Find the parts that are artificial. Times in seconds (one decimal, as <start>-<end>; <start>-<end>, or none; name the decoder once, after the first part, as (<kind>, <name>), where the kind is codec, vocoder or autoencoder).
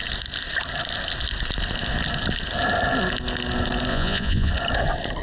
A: 3.9-4.5 (vocoder, Vocos)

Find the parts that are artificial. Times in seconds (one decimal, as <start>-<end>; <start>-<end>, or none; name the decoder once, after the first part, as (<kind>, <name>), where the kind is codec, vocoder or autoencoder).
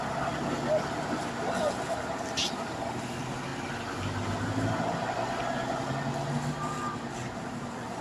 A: none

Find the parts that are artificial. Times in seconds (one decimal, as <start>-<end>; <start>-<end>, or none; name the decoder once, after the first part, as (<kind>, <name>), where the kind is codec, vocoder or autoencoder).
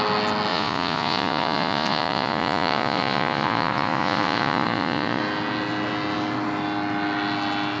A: 0.5-5.2 (vocoder, Vocos)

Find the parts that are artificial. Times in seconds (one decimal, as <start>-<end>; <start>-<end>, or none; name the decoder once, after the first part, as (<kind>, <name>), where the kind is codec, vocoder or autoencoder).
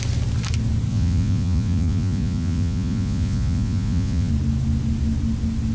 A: 0.9-4.3 (vocoder, Vocos)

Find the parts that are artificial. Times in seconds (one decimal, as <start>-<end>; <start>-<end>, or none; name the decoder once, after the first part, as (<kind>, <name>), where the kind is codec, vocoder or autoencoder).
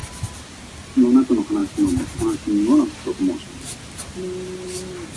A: none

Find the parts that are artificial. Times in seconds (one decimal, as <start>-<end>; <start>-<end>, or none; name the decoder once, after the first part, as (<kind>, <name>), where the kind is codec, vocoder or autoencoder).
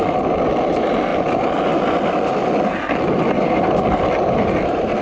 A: none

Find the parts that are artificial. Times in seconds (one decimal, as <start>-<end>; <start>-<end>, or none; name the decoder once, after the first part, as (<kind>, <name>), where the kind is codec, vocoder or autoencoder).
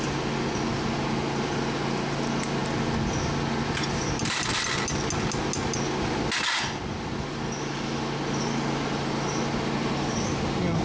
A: none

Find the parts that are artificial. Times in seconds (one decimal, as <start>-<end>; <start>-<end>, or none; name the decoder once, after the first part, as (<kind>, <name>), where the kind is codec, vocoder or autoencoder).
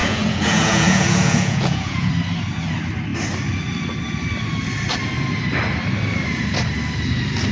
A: 0.0-2.1 (vocoder, Vocos)